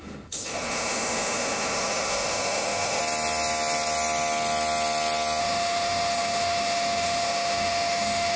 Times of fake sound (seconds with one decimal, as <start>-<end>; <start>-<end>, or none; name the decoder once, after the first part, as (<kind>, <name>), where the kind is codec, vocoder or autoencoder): 0.0-3.0 (autoencoder, DAC-VAE); 5.4-8.4